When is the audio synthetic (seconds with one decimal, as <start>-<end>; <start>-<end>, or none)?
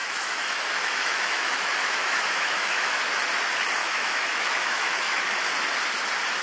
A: 0.0-3.2; 3.8-5.5